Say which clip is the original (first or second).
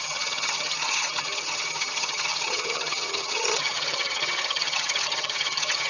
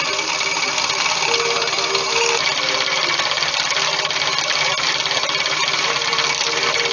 second